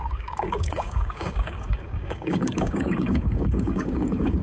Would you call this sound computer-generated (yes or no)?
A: yes